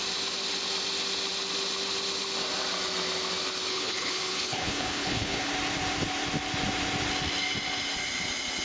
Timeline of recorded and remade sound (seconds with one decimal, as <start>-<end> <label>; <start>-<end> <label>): 0.0-3.7 recorded; 3.7-5.5 remade; 5.5-8.6 recorded